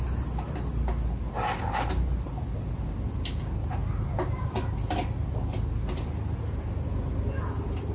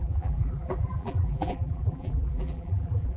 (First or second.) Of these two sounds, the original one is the first